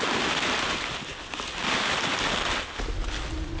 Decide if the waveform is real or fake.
real